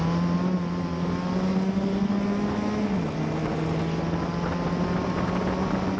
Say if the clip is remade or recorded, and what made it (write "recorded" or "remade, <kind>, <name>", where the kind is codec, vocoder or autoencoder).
recorded